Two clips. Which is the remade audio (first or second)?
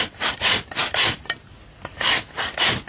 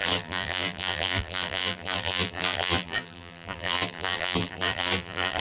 second